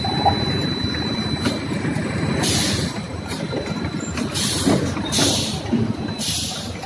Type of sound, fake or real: fake